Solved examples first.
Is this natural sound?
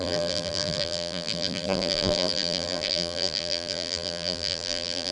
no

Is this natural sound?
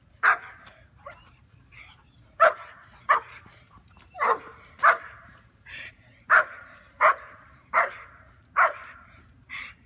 no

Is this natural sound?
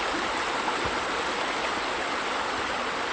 yes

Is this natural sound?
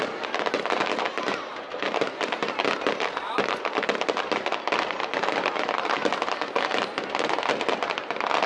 yes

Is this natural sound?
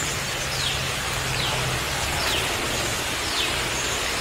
yes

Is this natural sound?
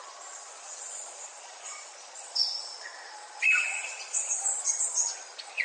no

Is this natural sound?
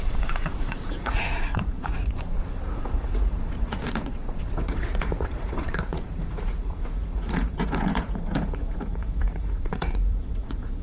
no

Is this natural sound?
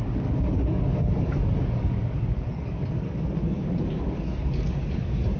no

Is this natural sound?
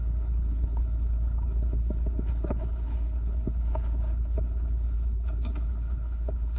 no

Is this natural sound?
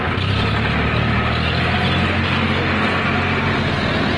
yes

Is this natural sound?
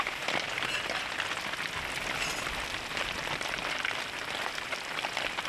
yes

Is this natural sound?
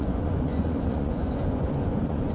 no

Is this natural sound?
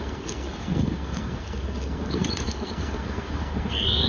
no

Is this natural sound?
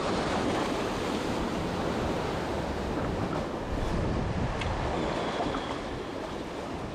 yes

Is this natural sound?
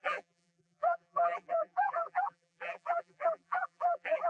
no